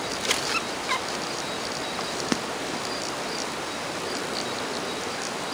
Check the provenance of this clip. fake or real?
real